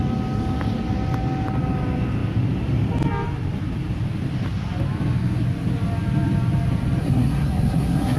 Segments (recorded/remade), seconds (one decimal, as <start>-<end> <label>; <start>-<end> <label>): 0.0-7.0 recorded; 7.0-8.2 remade